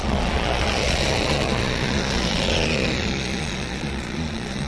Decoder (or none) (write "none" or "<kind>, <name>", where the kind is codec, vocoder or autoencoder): vocoder, Vocos